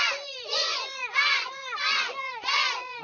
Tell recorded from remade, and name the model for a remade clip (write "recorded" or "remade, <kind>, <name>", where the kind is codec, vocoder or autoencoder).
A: remade, vocoder, Vocos